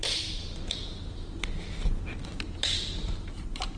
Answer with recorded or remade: recorded